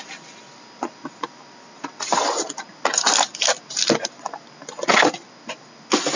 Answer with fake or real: real